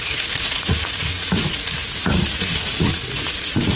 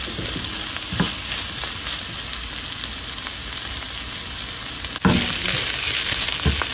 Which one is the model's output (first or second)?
first